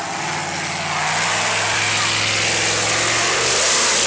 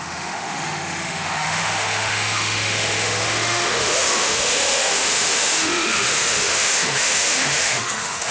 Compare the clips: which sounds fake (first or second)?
second